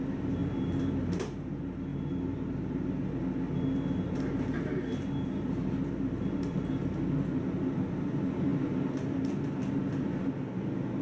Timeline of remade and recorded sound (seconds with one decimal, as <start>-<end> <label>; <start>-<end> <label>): 0.0-11.0 recorded